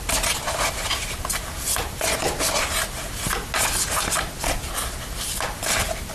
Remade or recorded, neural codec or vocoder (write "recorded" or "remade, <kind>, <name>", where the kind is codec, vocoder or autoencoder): recorded